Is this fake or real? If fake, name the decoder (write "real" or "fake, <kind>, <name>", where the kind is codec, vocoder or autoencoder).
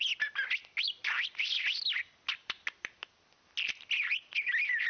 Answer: real